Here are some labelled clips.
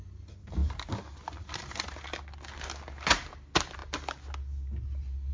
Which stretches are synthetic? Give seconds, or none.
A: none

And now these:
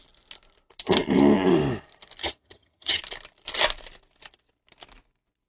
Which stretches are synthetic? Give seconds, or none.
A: 2.2-3.0 (vocoder, HiFi-GAN)

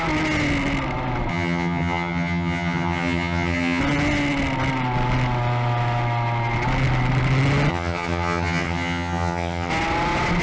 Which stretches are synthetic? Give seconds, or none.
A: 1.3-3.8 (vocoder, HiFi-GAN); 7.7-9.7